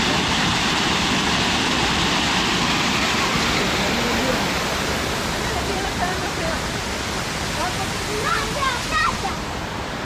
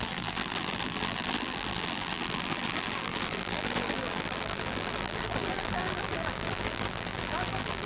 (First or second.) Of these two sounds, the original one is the first